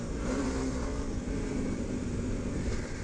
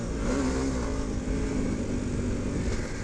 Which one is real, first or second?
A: second